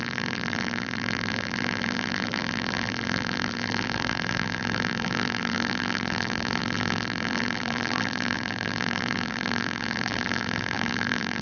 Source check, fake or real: fake